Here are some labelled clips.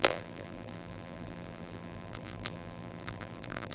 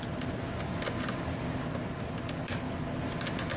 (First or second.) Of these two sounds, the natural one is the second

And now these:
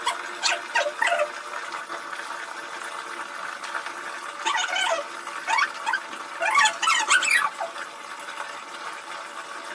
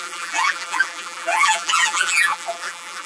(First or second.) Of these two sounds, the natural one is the first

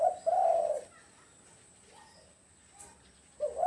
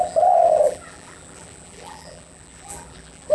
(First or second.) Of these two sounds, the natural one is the first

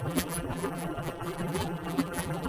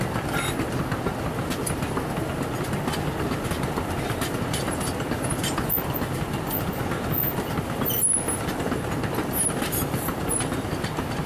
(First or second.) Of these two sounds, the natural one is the second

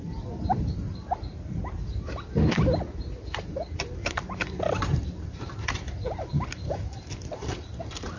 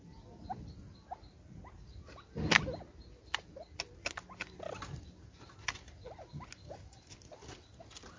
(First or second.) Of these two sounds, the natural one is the second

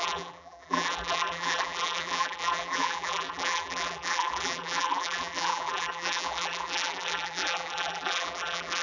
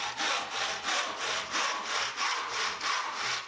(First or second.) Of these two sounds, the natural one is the second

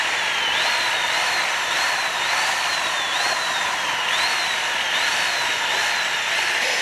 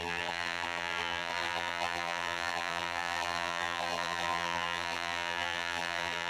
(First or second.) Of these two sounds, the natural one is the first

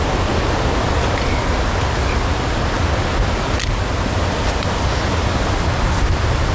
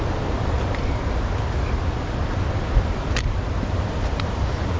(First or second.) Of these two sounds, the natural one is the first